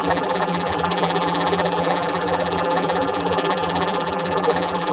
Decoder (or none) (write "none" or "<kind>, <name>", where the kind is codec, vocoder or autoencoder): vocoder, BigVGAN v2